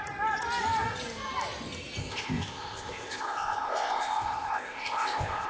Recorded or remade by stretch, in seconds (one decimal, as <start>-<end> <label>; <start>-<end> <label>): 0.0-2.0 recorded; 2.0-5.5 remade